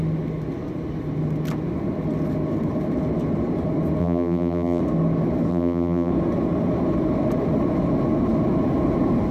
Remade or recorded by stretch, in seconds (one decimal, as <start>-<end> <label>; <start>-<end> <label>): 0.0-4.0 recorded; 4.0-4.8 remade; 4.8-5.5 recorded; 5.5-6.1 remade; 6.1-9.3 recorded